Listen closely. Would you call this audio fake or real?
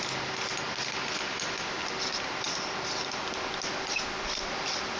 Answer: real